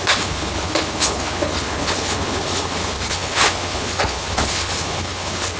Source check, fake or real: fake